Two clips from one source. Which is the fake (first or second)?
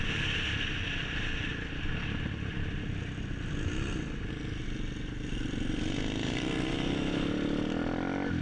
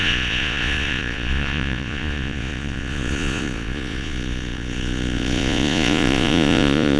second